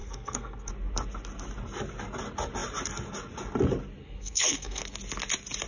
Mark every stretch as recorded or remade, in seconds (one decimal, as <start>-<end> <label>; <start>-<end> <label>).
0.0-0.7 remade; 0.7-4.0 recorded; 4.0-4.8 remade; 4.8-5.7 recorded